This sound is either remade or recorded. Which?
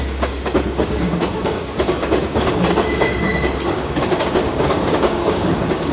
remade